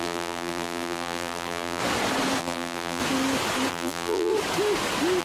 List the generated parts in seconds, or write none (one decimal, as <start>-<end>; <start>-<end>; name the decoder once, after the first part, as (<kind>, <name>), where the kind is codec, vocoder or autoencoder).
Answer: 0.0-1.8 (vocoder, BigVGAN v2); 2.4-3.0; 3.7-4.3